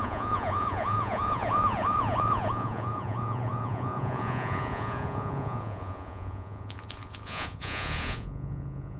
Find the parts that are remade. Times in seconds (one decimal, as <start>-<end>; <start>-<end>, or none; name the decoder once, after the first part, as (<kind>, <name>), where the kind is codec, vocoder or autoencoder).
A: 0.0-9.0 (vocoder, Vocos)